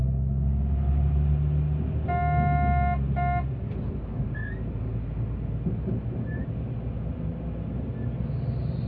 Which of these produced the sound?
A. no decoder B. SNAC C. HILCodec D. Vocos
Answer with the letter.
A